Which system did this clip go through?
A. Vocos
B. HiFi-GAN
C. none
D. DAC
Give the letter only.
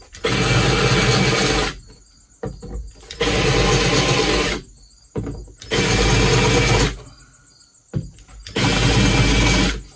C